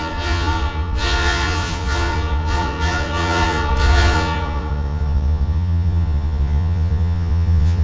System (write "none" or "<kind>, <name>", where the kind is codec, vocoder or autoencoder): vocoder, Vocos